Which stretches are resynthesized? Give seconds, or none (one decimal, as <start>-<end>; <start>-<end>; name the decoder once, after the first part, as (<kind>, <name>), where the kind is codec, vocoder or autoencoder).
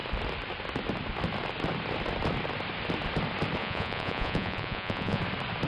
3.6-5.2 (vocoder, Vocos)